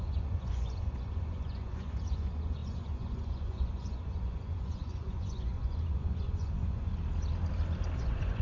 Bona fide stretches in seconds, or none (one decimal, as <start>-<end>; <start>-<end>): 6.9-8.0